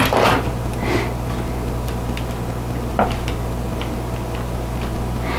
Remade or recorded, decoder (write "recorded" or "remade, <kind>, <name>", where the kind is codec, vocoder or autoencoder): recorded